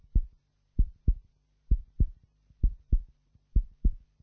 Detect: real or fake fake